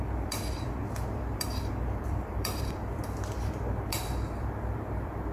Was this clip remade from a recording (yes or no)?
yes